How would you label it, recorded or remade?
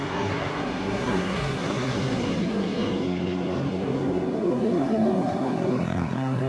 remade